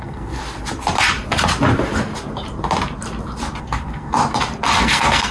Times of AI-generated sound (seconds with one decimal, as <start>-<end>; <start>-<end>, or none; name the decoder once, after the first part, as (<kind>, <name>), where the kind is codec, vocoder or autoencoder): 0.0-0.4 (codec, SNAC); 3.6-4.2; 4.8-5.3